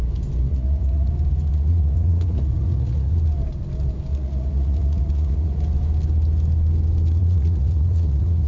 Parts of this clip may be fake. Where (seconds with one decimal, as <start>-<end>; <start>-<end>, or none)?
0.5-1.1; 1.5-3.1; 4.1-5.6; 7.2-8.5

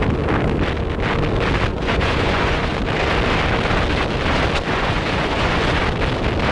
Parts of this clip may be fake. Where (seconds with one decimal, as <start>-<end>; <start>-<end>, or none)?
1.7-2.7; 4.7-5.8

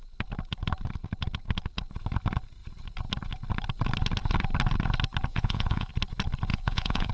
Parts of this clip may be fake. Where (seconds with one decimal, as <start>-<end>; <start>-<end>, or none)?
5.3-5.9; 6.5-7.1